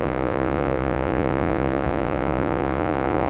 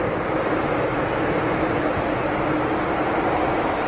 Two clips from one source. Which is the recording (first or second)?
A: second